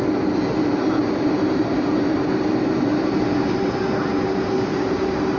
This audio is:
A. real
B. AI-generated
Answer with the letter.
A